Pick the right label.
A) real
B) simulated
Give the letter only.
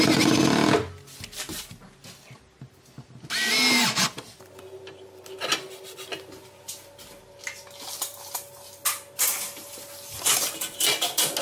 A